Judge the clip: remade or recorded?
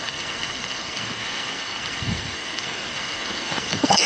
remade